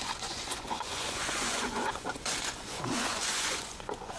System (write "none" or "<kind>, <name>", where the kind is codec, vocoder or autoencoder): vocoder, Vocos